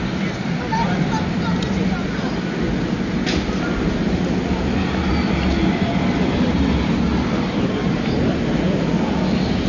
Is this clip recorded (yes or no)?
yes